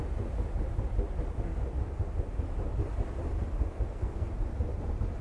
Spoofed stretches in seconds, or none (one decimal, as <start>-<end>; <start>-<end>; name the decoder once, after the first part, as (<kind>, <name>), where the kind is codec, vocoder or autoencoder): 3.7-4.3 (codec, SNAC)